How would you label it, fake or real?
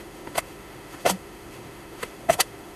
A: fake